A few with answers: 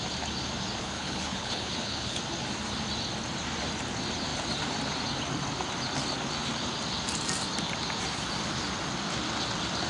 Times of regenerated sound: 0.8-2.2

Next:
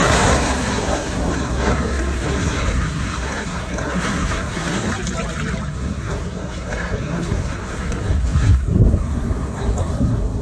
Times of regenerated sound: 0.0-4.9; 5.7-10.4

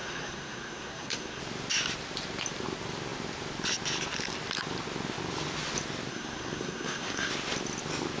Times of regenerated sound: 0.0-1.4; 6.1-7.3

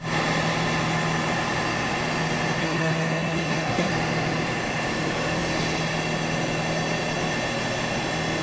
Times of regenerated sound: 2.6-3.9

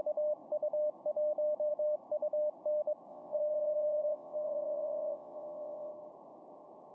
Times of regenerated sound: 3.1-5.9

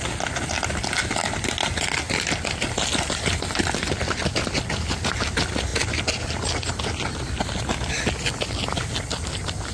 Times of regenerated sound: none